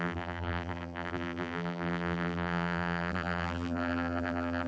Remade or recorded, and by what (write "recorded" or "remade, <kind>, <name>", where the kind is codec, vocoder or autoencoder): remade, vocoder, BigVGAN v2